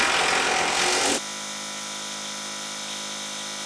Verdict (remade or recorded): recorded